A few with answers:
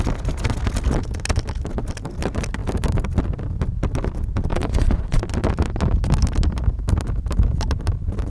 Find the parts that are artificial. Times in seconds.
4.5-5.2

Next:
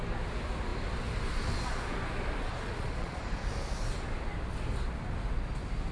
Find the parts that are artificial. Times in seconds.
2.5-3.5

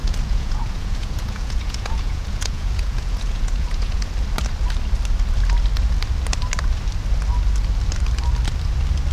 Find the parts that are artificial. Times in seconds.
0.0-4.1

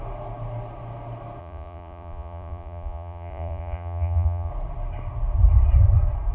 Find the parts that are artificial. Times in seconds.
1.4-4.5

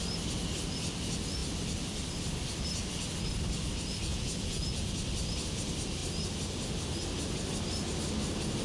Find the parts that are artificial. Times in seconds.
4.1-4.9